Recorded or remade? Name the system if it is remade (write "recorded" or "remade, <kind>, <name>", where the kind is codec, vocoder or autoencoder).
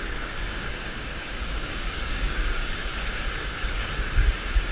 remade, codec, DAC